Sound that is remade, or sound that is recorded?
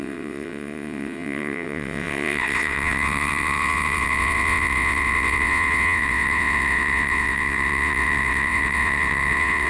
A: remade